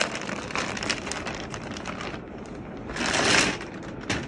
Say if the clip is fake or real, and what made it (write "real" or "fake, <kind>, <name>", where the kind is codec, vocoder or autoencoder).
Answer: fake, vocoder, BigVGAN v2